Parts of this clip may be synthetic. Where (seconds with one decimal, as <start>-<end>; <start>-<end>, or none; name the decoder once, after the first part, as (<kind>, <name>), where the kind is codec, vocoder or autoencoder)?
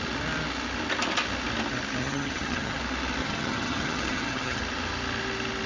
2.0-2.8 (vocoder, HiFi-GAN); 3.2-4.6